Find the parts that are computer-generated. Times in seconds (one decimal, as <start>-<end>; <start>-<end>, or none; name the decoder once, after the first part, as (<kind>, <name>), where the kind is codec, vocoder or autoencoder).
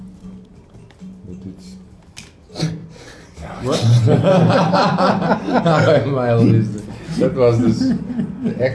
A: 2.8-5.3 (vocoder, BigVGAN v2)